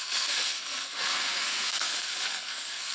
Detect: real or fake fake